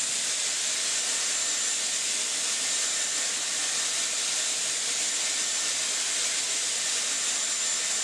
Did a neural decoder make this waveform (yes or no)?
no